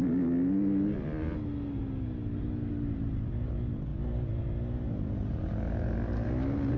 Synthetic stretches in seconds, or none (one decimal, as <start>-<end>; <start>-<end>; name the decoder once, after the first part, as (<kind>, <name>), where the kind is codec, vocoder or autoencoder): none